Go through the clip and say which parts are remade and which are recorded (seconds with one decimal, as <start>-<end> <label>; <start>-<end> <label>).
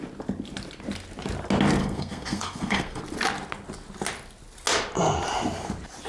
0.0-1.8 recorded; 1.8-3.0 remade; 3.0-6.1 recorded